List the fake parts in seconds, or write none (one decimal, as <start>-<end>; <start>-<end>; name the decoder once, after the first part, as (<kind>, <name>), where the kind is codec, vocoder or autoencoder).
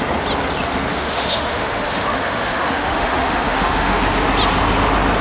0.9-4.0 (autoencoder, DAC-VAE)